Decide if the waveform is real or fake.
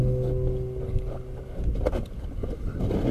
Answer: real